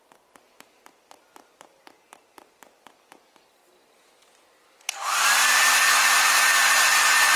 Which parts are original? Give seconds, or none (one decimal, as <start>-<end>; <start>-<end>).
3.6-5.5